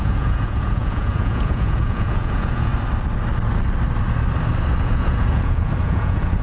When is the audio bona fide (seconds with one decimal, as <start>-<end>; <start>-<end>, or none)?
2.7-4.8

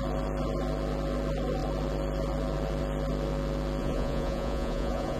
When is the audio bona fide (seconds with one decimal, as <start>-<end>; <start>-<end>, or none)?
0.0-3.8